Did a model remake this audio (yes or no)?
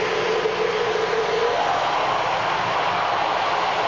no